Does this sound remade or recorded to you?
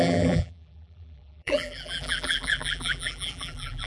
remade